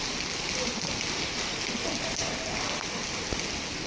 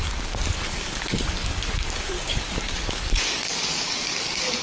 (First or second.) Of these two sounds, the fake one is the second